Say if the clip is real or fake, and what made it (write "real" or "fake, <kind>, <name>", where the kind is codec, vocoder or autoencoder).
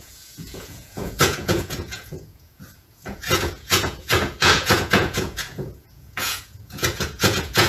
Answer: fake, vocoder, Vocos